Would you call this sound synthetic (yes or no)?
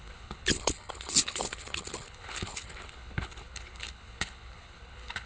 yes